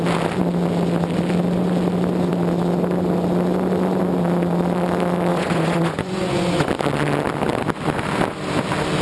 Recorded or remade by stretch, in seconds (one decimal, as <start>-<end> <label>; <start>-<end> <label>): 0.0-5.3 recorded; 5.3-6.7 remade; 6.7-9.0 recorded